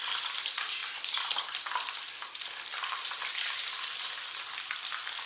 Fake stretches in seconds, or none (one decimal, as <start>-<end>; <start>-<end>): 0.8-2.1